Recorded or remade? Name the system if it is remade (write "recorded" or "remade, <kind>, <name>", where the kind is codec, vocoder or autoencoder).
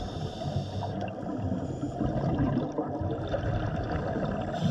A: recorded